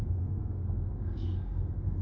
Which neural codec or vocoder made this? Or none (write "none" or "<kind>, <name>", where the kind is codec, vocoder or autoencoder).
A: codec, SNAC